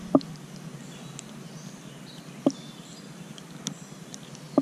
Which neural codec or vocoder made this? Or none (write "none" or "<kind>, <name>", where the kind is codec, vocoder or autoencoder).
none